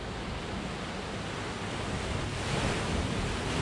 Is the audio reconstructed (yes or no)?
no